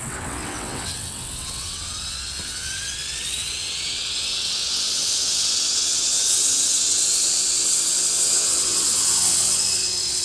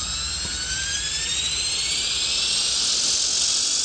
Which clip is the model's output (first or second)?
first